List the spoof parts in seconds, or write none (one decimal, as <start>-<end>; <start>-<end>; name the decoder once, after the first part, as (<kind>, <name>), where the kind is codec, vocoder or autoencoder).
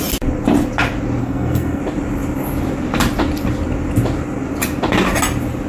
1.2-1.8 (codec, SNAC)